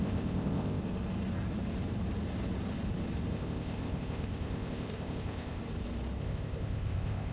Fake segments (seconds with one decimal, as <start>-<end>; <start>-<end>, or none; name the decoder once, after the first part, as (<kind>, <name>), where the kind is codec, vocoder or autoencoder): 0.0-0.8 (codec, ZipCodec); 3.3-5.6; 6.2-7.3